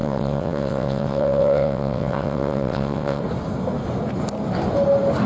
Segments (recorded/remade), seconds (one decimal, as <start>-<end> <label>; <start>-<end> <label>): 0.0-3.2 remade; 3.2-5.3 recorded